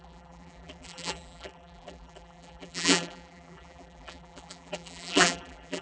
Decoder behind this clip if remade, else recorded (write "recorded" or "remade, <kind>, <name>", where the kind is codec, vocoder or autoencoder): remade, vocoder, BigVGAN v2